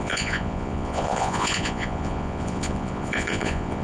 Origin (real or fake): fake